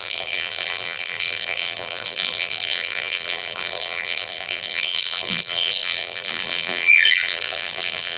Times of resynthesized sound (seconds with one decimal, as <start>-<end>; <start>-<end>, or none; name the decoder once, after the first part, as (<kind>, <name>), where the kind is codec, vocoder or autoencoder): 0.0-8.2 (vocoder, BigVGAN v2)